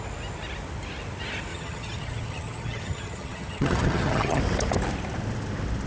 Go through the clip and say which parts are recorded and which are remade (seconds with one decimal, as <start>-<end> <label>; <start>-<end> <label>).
0.0-1.5 recorded; 1.5-4.4 remade; 4.4-5.9 recorded